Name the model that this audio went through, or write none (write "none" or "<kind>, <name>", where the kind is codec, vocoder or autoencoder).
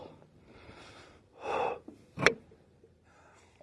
vocoder, BigVGAN v2